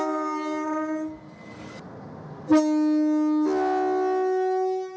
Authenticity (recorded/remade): recorded